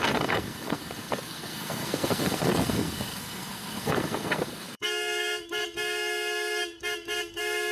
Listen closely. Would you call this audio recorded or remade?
remade